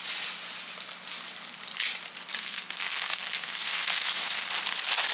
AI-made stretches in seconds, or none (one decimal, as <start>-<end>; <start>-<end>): 2.4-4.5